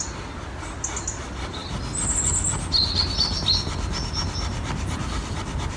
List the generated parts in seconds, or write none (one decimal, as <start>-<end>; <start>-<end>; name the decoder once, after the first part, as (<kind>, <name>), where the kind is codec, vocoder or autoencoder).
none